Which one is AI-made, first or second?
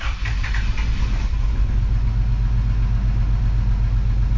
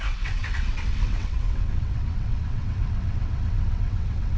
second